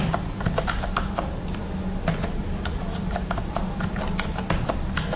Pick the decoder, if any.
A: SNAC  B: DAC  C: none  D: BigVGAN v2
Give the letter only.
C